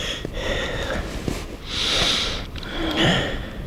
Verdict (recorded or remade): recorded